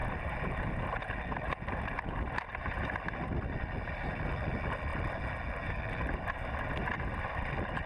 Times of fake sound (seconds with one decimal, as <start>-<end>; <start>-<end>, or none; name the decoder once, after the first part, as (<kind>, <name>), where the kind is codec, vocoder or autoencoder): none